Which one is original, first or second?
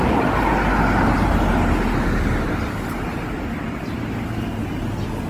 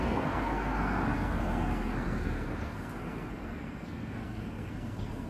first